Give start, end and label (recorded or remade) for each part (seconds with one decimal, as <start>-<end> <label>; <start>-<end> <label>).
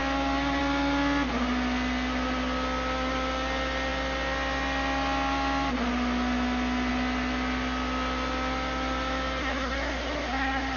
0.0-9.4 recorded; 9.4-10.8 remade